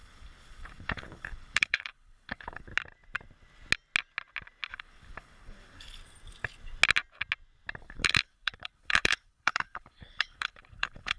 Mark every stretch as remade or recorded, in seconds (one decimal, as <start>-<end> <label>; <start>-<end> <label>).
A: 0.0-2.7 remade; 2.7-4.7 recorded; 4.7-6.0 remade; 6.0-7.8 recorded; 7.8-11.2 remade